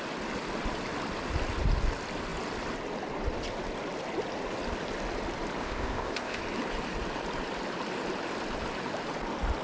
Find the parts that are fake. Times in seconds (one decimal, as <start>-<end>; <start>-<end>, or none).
5.6-6.4